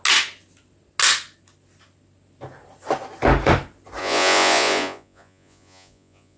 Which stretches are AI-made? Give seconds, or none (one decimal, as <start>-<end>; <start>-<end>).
4.0-6.4